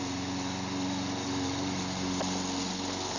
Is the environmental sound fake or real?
real